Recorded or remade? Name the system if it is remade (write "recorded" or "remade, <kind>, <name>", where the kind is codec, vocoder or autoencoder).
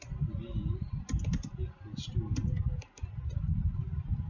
recorded